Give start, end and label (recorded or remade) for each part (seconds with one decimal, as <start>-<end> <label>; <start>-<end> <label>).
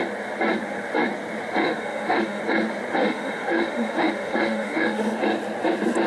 0.0-1.6 recorded; 1.6-2.4 remade; 2.4-3.0 recorded; 3.0-5.2 remade; 5.2-6.1 recorded